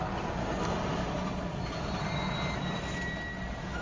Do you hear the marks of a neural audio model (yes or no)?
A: no